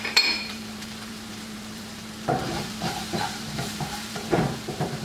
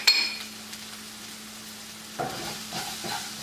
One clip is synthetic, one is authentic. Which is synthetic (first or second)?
first